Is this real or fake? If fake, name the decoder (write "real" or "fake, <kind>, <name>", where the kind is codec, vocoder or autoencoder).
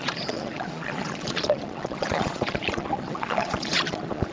fake, vocoder, Vocos